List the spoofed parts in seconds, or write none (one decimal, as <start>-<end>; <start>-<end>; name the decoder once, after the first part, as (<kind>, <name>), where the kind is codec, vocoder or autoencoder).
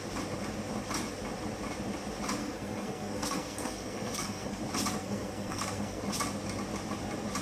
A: 2.4-4.6 (codec, SNAC); 5.0-6.0